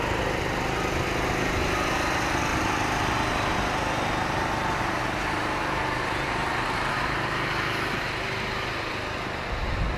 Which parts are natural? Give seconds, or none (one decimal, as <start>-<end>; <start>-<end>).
0.0-2.5; 7.5-10.0